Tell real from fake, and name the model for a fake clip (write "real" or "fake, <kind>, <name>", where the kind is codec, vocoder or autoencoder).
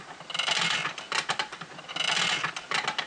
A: real